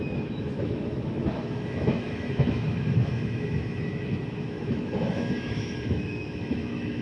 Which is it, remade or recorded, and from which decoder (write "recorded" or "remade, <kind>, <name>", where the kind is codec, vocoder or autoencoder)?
remade, autoencoder, DAC-VAE